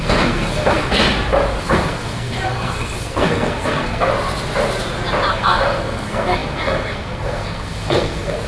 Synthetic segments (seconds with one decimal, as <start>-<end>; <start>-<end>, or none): 0.0-1.0; 1.6-4.1; 5.3-8.5